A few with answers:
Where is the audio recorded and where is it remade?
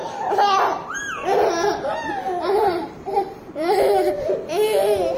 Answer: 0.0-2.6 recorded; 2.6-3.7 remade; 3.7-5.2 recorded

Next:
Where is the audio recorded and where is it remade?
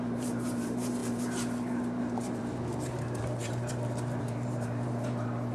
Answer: 0.0-5.5 remade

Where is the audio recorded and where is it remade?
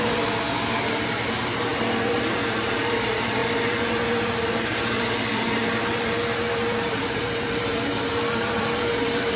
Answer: 0.0-9.4 remade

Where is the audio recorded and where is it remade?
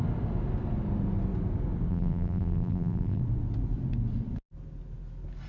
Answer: 0.0-1.9 recorded; 1.9-3.2 remade; 3.2-5.5 recorded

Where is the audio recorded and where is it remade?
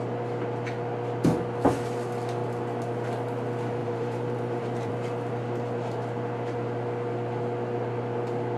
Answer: 0.0-3.8 recorded; 3.8-4.9 remade; 4.9-8.6 recorded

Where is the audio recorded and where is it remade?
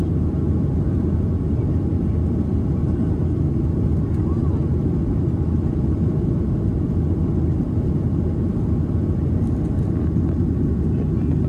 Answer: 0.0-11.5 recorded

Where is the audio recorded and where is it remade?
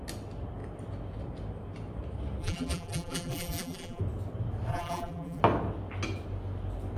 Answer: 0.0-2.4 recorded; 2.4-4.0 remade; 4.0-4.7 recorded; 4.7-5.4 remade; 5.4-7.0 recorded